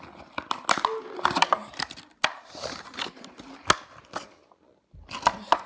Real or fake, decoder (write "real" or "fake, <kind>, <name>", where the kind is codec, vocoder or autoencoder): real